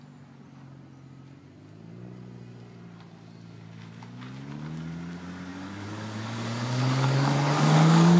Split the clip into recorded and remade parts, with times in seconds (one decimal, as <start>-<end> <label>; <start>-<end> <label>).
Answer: 0.0-5.5 recorded; 5.5-8.2 remade